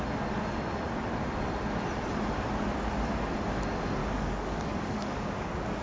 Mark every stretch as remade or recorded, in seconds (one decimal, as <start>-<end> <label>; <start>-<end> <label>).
0.0-4.0 recorded; 4.0-5.8 remade